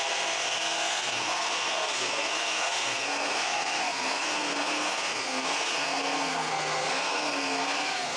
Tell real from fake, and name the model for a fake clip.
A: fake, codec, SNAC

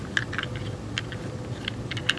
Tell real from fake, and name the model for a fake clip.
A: real